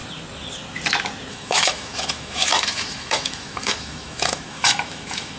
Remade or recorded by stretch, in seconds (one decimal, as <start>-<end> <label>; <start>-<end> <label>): 0.0-1.3 recorded; 1.3-5.4 remade